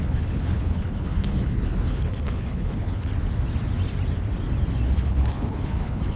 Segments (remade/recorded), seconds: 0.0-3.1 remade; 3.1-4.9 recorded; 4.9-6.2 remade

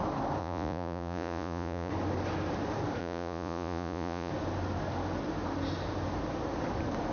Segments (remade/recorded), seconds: 0.0-0.4 recorded; 0.4-1.9 remade; 1.9-3.0 recorded; 3.0-4.3 remade; 4.3-7.1 recorded

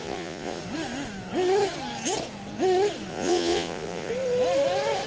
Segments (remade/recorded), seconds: 0.0-0.6 remade; 0.6-3.1 recorded; 3.1-4.1 remade; 4.1-5.1 recorded

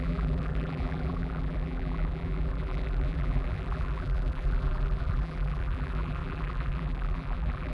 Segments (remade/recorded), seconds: 0.0-7.7 remade

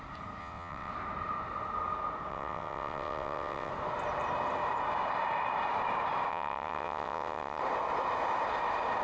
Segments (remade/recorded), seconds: 0.0-0.4 recorded; 0.4-0.9 remade; 0.9-2.3 recorded; 2.3-3.7 remade; 3.7-6.3 recorded; 6.3-7.6 remade; 7.6-9.0 recorded

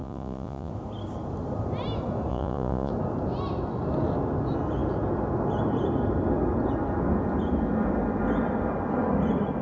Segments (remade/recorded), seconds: 0.0-0.7 remade; 0.7-2.3 recorded; 2.3-2.9 remade; 2.9-9.6 recorded

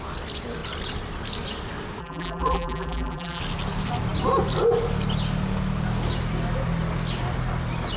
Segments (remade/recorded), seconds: 0.0-2.0 recorded; 2.0-3.4 remade; 3.4-8.0 recorded

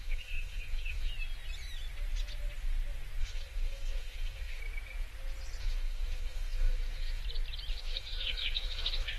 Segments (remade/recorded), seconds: 0.0-1.1 remade; 1.1-3.2 recorded; 3.2-4.6 remade; 4.6-5.6 recorded; 5.6-7.2 remade; 7.2-7.7 recorded; 7.7-9.2 remade